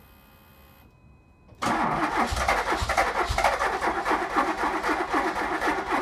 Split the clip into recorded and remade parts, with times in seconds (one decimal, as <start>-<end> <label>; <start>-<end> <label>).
0.0-6.0 recorded